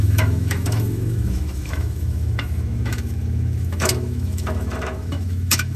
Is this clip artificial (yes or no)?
yes